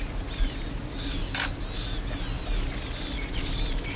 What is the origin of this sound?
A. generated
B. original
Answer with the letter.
B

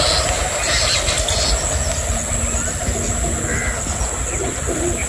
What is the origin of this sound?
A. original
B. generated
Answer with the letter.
A